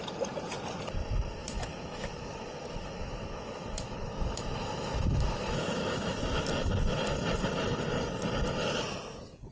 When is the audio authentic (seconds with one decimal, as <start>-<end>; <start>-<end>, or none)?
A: 0.0-1.4; 6.4-9.5